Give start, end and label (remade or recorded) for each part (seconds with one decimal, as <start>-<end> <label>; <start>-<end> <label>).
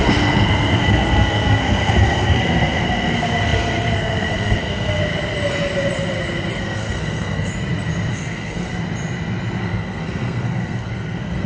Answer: 0.0-5.0 remade; 5.0-6.5 recorded; 6.5-7.5 remade; 7.5-8.1 recorded; 8.1-8.7 remade; 8.7-9.6 recorded; 9.6-11.5 remade